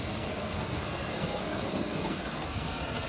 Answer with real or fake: fake